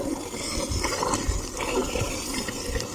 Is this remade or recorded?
recorded